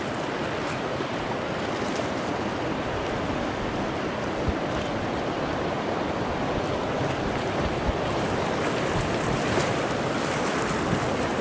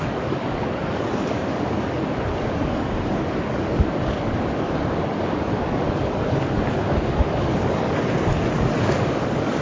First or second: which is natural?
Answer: first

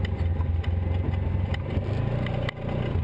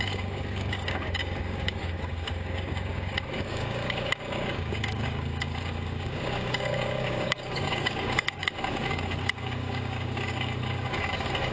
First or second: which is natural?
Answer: first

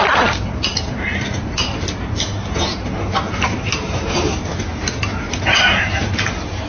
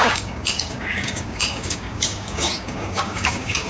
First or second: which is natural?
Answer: first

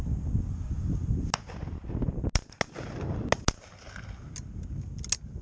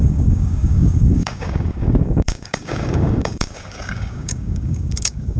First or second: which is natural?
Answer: first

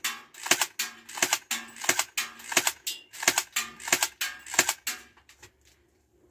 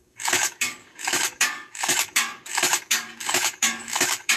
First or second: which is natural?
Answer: first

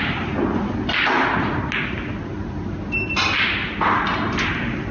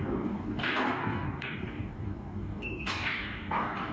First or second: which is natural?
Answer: first